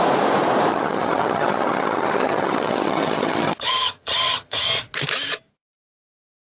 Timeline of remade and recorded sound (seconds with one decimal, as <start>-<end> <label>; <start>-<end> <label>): 0.0-0.7 recorded; 0.7-4.7 remade; 4.7-6.6 recorded